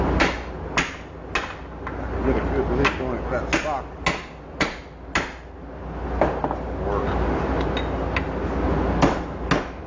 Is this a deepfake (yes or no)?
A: no